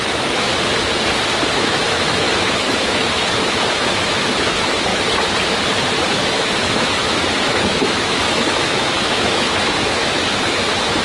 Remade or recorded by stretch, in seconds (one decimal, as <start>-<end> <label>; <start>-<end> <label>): 0.0-0.5 remade; 0.5-1.5 recorded; 1.5-4.9 remade; 4.9-6.1 recorded; 6.1-11.0 remade